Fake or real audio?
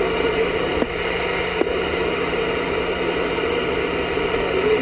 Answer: real